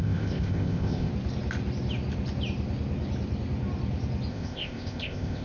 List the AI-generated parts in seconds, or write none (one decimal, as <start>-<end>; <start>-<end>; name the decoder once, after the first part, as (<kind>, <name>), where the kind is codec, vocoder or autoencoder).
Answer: 0.0-1.1 (codec, ZipCodec); 4.3-5.4